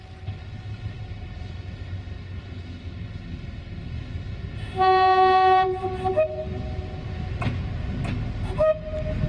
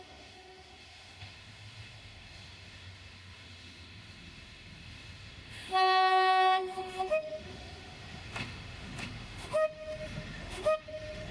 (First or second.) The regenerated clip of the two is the second